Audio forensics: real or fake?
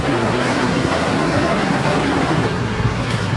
fake